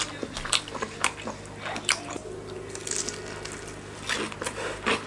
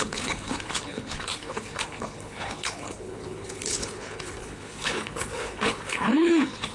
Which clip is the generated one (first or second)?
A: second